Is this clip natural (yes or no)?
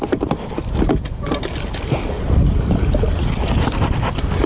yes